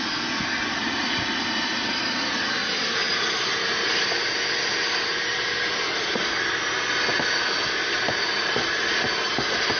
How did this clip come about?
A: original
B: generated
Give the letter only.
A